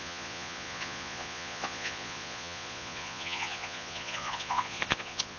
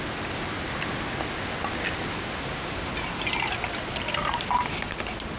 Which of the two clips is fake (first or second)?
first